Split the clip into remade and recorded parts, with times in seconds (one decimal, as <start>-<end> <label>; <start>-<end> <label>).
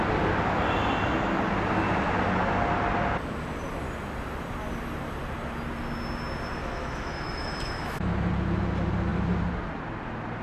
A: 0.0-6.6 recorded; 6.6-8.3 remade; 8.3-10.4 recorded